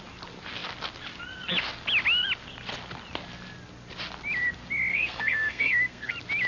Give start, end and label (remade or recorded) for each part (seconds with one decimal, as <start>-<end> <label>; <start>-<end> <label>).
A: 0.0-4.9 recorded; 4.9-6.1 remade; 6.1-6.5 recorded